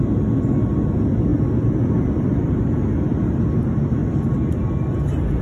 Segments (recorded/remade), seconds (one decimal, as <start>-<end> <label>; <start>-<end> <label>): 0.0-5.4 recorded